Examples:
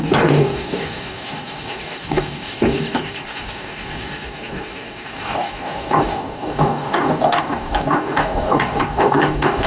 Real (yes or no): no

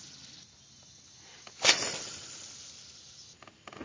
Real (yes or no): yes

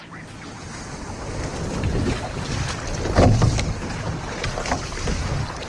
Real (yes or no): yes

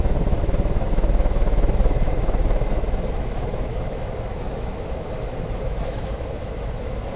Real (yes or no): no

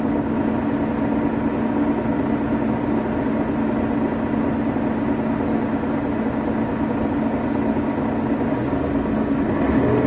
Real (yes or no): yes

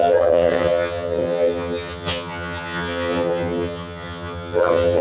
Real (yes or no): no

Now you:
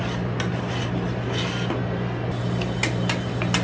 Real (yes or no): yes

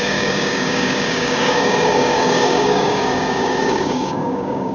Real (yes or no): no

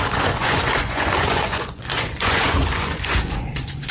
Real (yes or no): no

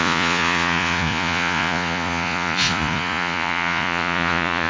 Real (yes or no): no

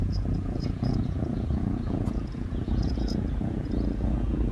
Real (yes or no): no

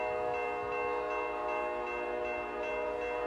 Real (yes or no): yes